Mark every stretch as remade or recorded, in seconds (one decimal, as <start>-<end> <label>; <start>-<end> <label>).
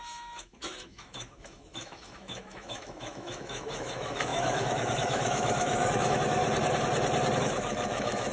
0.0-6.4 remade; 6.4-7.4 recorded; 7.4-8.3 remade